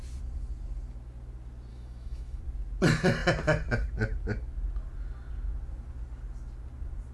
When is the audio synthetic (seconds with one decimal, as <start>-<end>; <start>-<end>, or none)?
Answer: 1.7-2.4